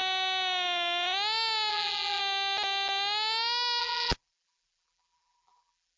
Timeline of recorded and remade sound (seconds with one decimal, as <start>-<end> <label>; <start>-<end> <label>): 0.0-1.7 recorded; 1.7-2.2 remade; 2.2-3.8 recorded; 3.8-6.0 remade